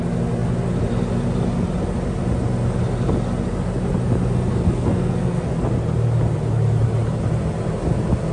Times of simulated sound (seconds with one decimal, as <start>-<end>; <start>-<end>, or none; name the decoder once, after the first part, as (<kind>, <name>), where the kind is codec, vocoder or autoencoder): 4.5-5.5 (codec, SNAC)